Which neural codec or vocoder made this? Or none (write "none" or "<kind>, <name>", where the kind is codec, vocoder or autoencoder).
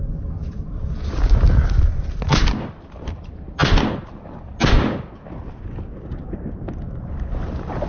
none